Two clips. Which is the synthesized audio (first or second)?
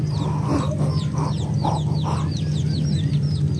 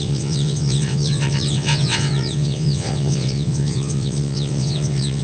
second